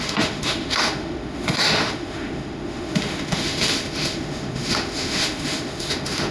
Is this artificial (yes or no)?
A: yes